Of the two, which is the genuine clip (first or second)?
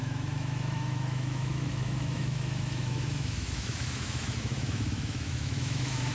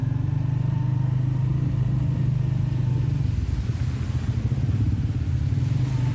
second